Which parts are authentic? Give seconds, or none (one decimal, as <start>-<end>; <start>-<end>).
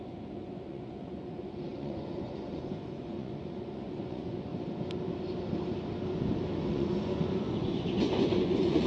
4.5-6.7